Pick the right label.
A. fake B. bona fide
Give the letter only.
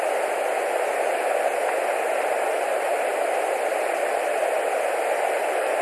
B